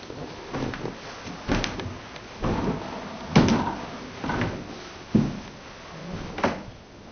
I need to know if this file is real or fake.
real